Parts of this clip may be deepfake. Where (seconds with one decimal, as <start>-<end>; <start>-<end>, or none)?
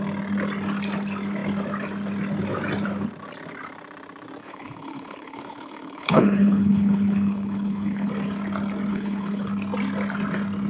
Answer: 4.4-8.1; 8.9-9.5